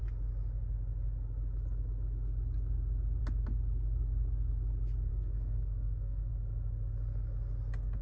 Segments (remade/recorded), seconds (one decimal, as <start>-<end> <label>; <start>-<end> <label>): 0.0-5.1 recorded; 5.1-6.3 remade; 6.3-8.0 recorded